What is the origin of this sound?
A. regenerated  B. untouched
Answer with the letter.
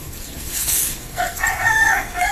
A